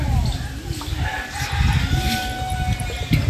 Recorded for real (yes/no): yes